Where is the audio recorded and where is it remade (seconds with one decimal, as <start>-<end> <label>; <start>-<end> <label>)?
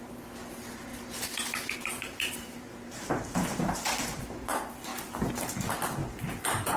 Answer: 0.0-0.9 recorded; 0.9-4.1 remade; 4.1-6.0 recorded; 6.0-6.8 remade